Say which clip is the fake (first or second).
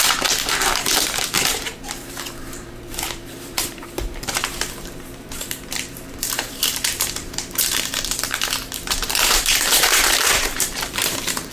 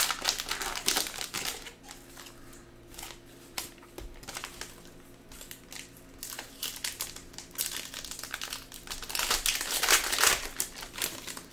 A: first